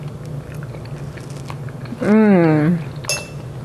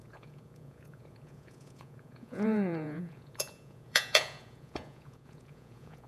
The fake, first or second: second